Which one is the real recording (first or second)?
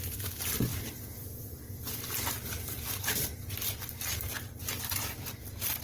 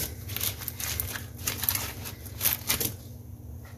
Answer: second